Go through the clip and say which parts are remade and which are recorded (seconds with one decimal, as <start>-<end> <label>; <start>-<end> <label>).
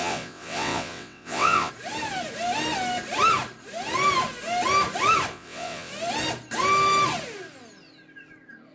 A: 0.0-1.7 remade; 1.7-5.3 recorded; 5.3-5.9 remade; 5.9-8.7 recorded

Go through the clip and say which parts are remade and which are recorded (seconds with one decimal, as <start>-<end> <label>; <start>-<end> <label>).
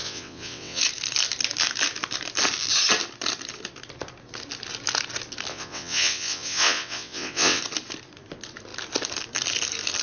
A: 0.0-0.8 remade; 0.8-5.5 recorded; 5.5-7.6 remade; 7.6-10.0 recorded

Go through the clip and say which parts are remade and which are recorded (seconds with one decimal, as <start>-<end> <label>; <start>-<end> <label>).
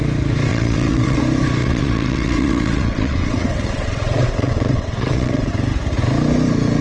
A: 0.0-0.5 recorded; 0.5-1.2 remade; 1.2-1.6 recorded; 1.6-5.5 remade; 5.5-6.8 recorded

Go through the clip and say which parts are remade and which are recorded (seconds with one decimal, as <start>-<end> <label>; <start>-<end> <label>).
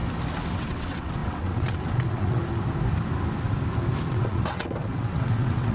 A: 0.0-0.5 recorded; 0.5-2.4 remade; 2.4-4.1 recorded; 4.1-5.7 remade